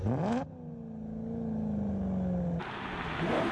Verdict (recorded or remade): recorded